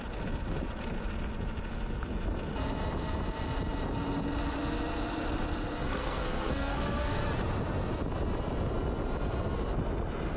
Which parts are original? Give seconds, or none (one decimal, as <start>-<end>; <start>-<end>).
0.0-6.0; 7.2-10.4